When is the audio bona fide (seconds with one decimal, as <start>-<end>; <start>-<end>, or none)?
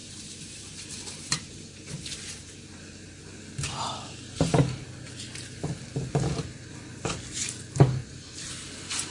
3.2-8.0; 8.5-9.1